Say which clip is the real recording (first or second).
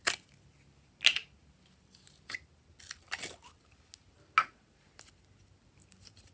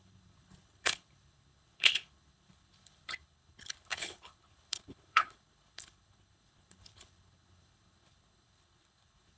first